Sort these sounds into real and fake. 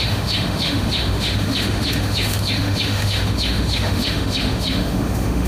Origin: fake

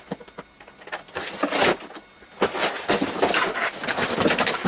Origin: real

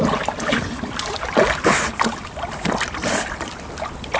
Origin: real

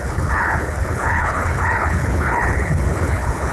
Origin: fake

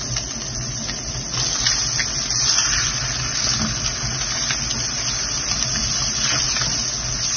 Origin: real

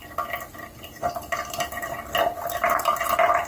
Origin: real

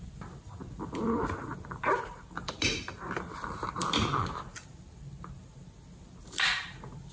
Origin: real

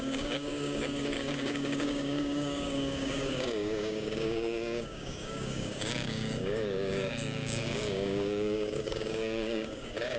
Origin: fake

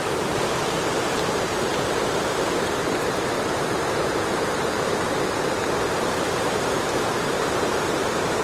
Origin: fake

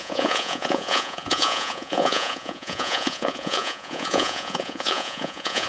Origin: fake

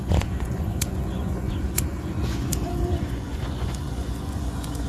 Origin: fake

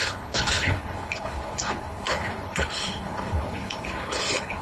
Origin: fake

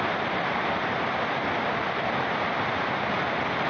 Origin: real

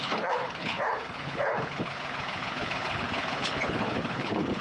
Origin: fake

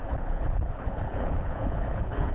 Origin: fake